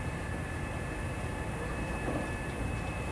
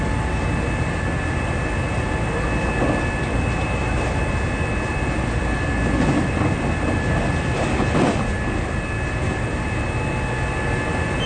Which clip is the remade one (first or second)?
first